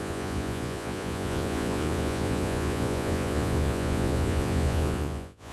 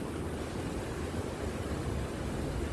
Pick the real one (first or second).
second